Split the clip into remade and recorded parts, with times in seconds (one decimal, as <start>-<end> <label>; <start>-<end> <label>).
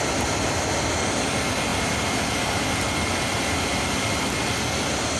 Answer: 0.0-5.2 recorded